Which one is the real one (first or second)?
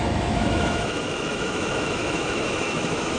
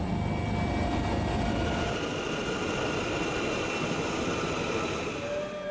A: second